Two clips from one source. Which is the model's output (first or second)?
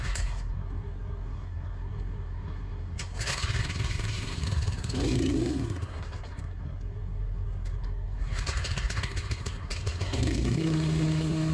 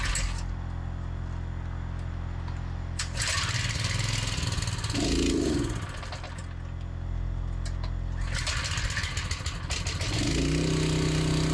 first